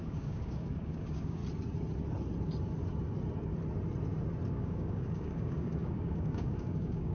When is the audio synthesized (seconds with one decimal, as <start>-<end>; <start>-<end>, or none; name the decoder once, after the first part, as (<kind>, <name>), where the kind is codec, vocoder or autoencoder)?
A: 0.0-1.4 (codec, DAC); 4.5-7.1